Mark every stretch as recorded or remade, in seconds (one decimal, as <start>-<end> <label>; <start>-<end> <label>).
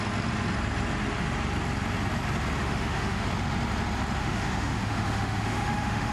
0.0-2.6 recorded; 2.6-3.3 remade; 3.3-4.2 recorded; 4.2-6.1 remade